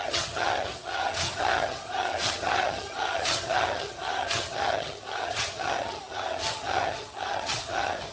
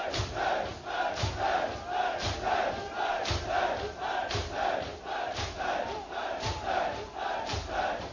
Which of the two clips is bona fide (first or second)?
second